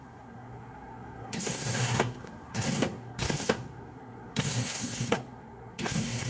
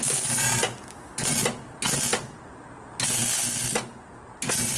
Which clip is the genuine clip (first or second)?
second